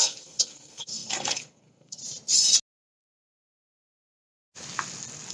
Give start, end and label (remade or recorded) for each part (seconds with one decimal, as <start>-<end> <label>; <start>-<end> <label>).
0.0-2.0 remade; 2.0-3.0 recorded; 3.0-4.2 remade; 4.2-5.3 recorded